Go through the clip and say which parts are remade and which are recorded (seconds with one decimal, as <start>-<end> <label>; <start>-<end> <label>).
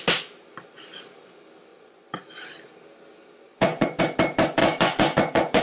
0.0-1.7 recorded; 1.7-2.3 remade; 2.3-3.5 recorded; 3.5-4.0 remade; 4.0-4.6 recorded; 4.6-5.6 remade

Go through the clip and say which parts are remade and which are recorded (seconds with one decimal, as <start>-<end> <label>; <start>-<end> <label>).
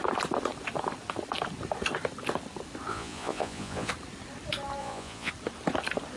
0.0-2.9 recorded; 2.9-3.9 remade; 3.9-4.8 recorded; 4.8-5.3 remade; 5.3-6.2 recorded